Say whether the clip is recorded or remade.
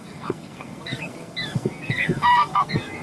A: remade